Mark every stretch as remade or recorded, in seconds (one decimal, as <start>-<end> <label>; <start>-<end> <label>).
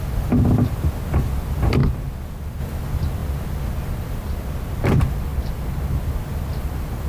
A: 0.0-7.1 recorded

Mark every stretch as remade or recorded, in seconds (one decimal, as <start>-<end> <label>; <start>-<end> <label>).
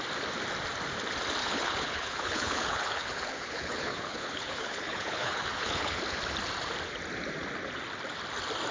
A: 0.0-1.4 recorded; 1.4-6.0 remade; 6.0-8.7 recorded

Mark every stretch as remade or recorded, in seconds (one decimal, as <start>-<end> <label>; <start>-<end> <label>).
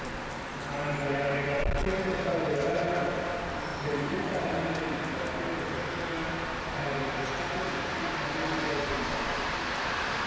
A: 0.0-10.3 recorded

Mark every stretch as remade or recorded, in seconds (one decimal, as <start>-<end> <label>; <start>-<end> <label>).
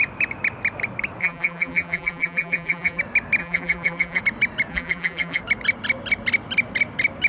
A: 0.0-1.2 recorded; 1.2-3.0 remade; 3.0-3.4 recorded; 3.4-4.2 remade; 4.2-4.7 recorded; 4.7-5.4 remade; 5.4-7.3 recorded